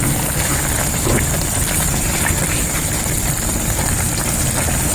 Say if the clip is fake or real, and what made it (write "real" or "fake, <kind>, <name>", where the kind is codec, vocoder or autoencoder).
real